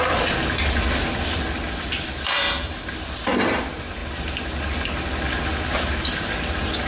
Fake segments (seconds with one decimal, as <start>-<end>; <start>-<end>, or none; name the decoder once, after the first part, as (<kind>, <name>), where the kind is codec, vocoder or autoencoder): none